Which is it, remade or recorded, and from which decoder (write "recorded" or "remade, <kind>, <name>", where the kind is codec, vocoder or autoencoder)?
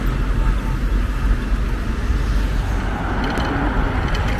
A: recorded